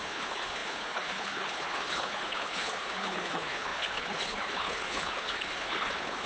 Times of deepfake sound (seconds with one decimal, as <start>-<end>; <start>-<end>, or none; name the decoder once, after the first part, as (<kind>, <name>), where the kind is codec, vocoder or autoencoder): 0.0-6.3 (codec, HILCodec)